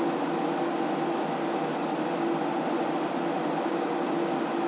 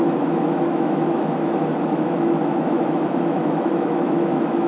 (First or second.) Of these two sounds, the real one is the first